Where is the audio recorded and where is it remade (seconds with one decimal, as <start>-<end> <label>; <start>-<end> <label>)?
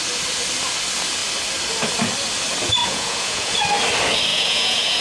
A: 0.0-2.8 recorded; 2.8-3.5 remade; 3.5-4.3 recorded; 4.3-5.0 remade